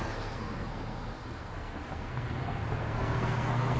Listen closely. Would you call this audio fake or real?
fake